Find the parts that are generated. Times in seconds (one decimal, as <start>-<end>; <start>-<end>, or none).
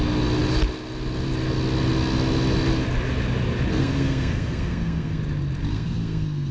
3.7-5.2; 5.7-6.5